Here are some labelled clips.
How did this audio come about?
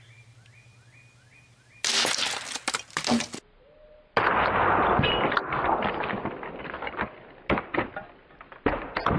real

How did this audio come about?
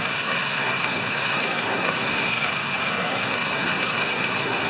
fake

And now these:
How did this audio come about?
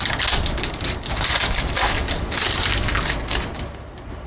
real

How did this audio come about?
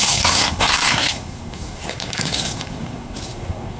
fake